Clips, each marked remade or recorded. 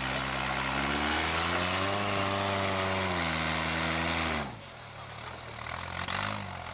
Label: recorded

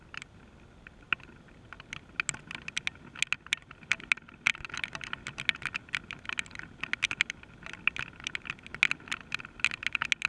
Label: recorded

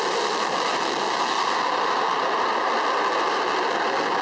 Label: recorded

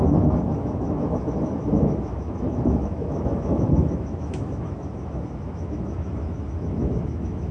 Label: remade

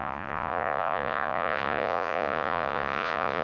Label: remade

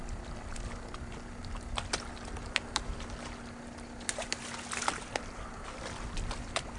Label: recorded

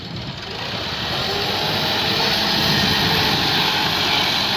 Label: recorded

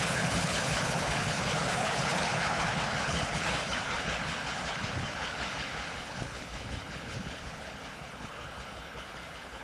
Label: remade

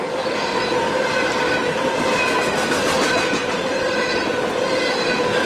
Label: recorded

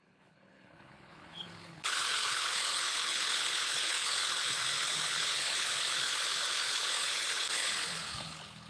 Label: remade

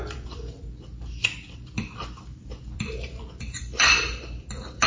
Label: remade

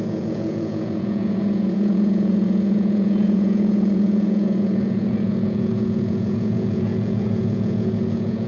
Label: remade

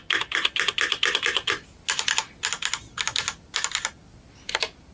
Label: recorded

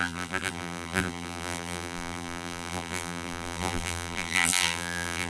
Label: remade